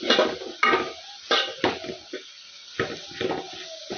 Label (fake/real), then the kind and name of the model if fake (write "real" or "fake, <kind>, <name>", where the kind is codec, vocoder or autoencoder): real